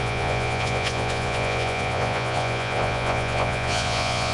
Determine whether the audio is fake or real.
fake